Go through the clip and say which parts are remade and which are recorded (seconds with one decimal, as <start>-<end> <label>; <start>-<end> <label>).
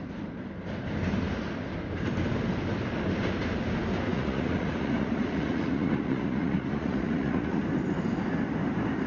0.0-4.1 recorded; 4.1-7.6 remade; 7.6-9.1 recorded